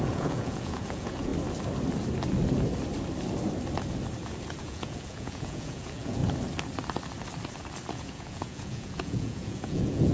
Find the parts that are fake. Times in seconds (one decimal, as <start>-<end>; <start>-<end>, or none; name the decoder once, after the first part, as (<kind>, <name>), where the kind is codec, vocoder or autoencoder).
0.0-1.3 (vocoder, Vocos); 4.6-6.2; 7.9-10.1